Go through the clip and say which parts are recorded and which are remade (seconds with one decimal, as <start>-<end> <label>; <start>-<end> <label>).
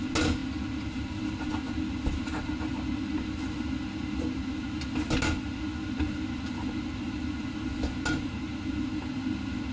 0.0-9.7 recorded